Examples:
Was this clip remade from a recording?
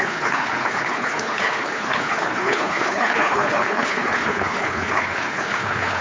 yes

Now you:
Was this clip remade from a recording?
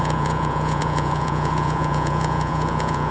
yes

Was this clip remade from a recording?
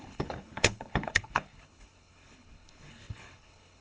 yes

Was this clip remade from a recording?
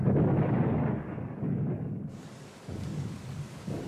yes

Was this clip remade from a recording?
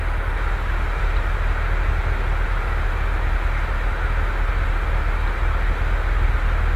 no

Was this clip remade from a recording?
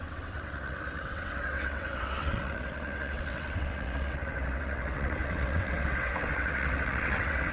yes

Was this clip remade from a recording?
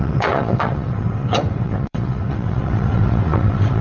yes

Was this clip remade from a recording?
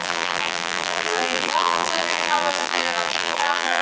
yes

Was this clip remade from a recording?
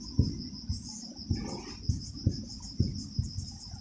no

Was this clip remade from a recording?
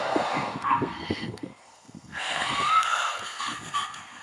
yes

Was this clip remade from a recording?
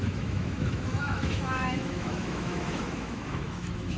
yes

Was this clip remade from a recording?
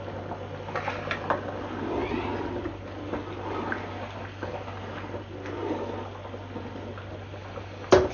no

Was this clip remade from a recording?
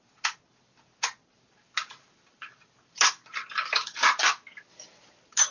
no